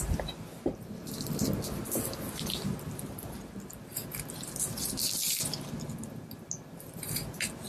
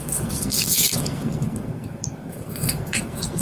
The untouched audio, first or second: first